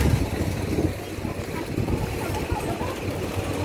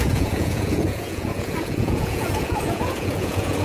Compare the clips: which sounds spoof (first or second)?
second